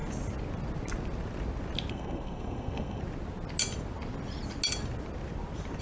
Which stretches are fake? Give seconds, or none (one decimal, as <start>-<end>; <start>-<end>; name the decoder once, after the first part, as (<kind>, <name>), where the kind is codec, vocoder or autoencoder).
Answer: 1.9-3.0 (codec, SNAC)